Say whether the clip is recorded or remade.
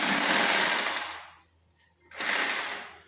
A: recorded